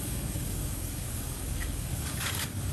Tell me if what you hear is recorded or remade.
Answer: remade